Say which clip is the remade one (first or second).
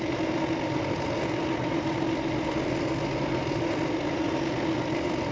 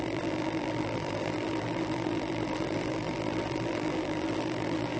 second